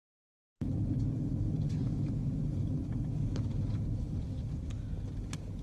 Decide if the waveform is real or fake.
real